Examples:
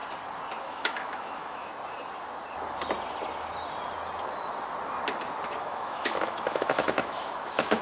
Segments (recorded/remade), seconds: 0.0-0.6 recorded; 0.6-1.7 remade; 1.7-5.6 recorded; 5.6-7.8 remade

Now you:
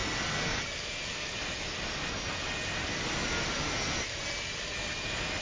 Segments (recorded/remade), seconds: 0.0-5.4 recorded

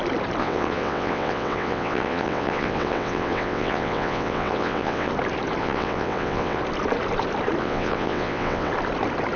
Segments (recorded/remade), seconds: 0.0-0.4 recorded; 0.4-5.1 remade; 5.1-5.6 recorded; 5.6-6.6 remade; 6.6-7.6 recorded; 7.6-8.7 remade; 8.7-9.4 recorded

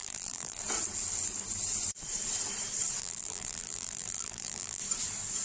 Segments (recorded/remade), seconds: 0.0-0.6 remade; 0.6-3.0 recorded; 3.0-4.8 remade; 4.8-5.4 recorded

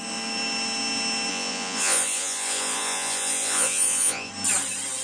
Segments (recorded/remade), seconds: 0.0-1.3 recorded; 1.3-4.3 remade; 4.3-5.0 recorded

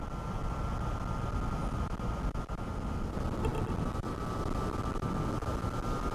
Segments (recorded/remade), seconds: 0.0-6.1 recorded

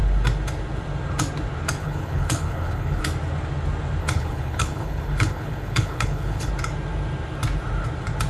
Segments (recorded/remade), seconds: 0.0-1.8 recorded; 1.8-3.0 remade; 3.0-4.0 recorded; 4.0-6.5 remade; 6.5-8.3 recorded

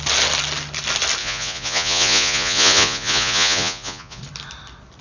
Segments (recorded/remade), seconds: 0.0-1.2 recorded; 1.2-4.2 remade; 4.2-5.0 recorded